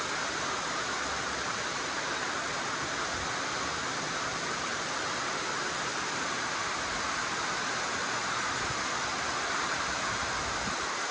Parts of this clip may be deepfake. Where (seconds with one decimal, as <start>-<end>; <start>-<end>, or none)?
none